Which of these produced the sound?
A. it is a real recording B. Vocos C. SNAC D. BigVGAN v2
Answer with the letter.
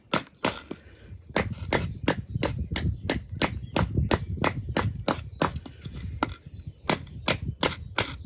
A